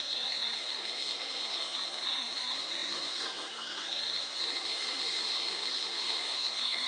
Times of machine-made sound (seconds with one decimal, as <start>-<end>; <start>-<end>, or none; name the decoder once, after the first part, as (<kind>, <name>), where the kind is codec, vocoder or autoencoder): 0.0-6.9 (codec, SNAC)